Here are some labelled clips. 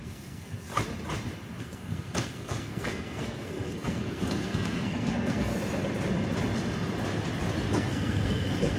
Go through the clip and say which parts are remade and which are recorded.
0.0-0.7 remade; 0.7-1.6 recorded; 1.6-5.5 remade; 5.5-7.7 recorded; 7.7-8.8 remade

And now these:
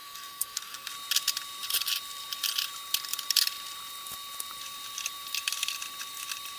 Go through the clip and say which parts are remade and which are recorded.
0.0-0.9 remade; 0.9-6.6 recorded

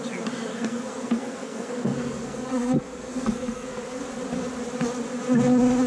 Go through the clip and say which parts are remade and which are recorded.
0.0-0.5 recorded; 0.5-4.0 remade; 4.0-5.9 recorded

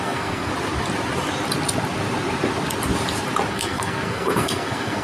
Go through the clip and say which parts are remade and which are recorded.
0.0-0.5 remade; 0.5-3.5 recorded; 3.5-5.0 remade